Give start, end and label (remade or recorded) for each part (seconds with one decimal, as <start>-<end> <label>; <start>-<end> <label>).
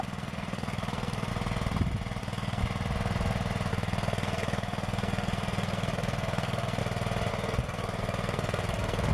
0.0-1.3 remade; 1.3-2.2 recorded; 2.2-2.6 remade; 2.6-3.7 recorded; 3.7-6.8 remade; 6.8-7.3 recorded; 7.3-9.1 remade